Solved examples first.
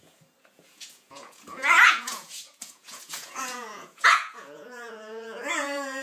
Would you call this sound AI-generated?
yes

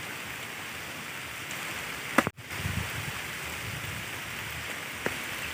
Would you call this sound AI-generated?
no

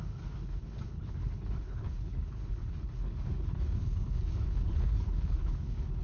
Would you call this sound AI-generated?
yes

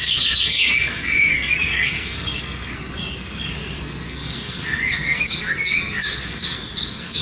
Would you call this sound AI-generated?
yes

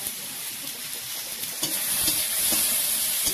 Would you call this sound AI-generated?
yes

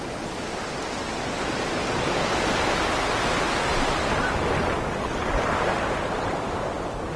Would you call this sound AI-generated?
no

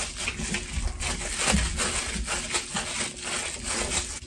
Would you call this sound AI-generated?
no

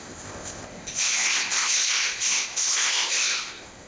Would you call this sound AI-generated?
yes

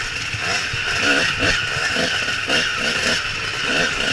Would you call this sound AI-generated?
no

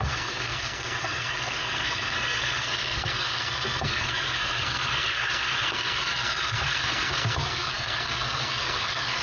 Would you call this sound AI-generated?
yes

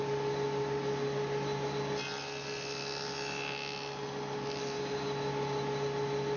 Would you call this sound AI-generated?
no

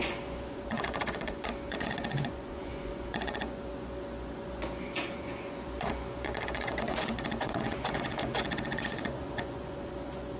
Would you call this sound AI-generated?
yes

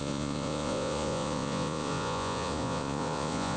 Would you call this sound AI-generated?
yes